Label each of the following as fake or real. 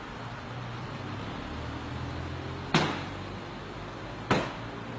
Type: real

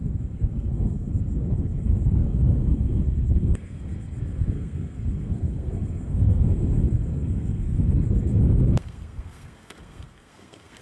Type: fake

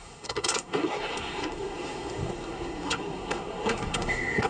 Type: fake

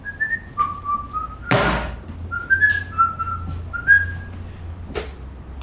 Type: real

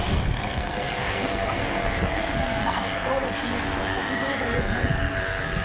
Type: fake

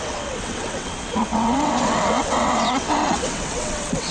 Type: fake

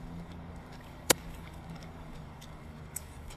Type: fake